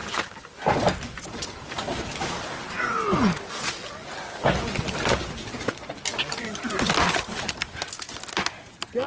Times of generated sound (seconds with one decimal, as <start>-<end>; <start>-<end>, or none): none